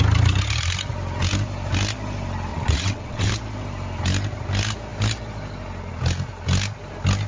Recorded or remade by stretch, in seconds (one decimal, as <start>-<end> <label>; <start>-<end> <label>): 0.0-2.5 recorded; 2.5-3.3 remade; 3.3-7.3 recorded